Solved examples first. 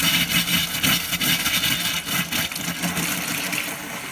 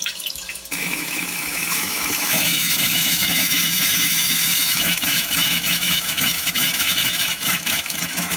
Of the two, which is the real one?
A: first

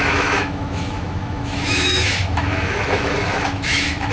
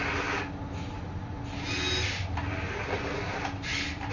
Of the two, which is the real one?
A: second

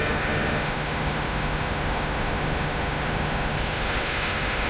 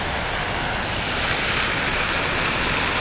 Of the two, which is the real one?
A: second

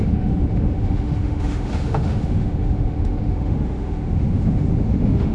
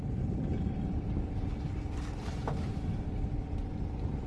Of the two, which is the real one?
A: second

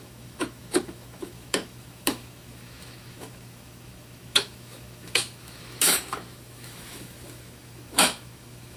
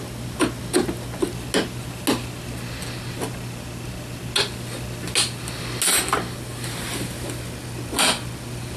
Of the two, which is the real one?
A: second